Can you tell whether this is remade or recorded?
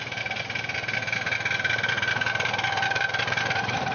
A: recorded